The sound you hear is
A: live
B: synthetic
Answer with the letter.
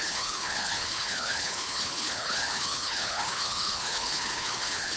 B